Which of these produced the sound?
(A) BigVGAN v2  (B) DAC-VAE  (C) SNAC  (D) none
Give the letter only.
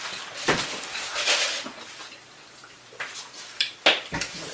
A